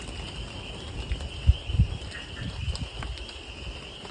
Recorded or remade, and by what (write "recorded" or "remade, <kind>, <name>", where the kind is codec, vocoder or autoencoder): recorded